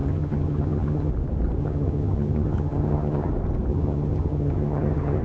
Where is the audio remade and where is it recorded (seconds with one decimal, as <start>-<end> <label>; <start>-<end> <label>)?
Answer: 0.0-1.1 remade; 1.1-1.6 recorded; 1.6-3.3 remade; 3.3-3.7 recorded; 3.7-5.2 remade